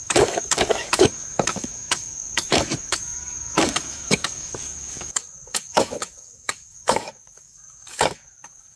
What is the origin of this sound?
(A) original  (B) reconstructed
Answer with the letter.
B